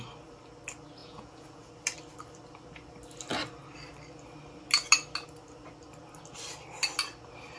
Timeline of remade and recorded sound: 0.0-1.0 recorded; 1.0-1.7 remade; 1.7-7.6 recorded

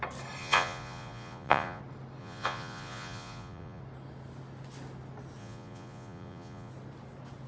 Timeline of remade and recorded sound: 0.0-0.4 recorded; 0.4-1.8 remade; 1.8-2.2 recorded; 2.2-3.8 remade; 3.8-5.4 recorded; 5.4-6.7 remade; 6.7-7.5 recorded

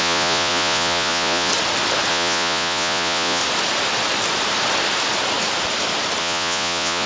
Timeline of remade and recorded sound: 0.0-1.5 remade; 1.5-2.1 recorded; 2.1-3.4 remade; 3.4-6.2 recorded; 6.2-7.1 remade